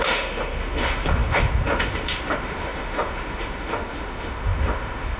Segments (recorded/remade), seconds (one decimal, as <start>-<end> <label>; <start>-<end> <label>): 0.0-5.2 remade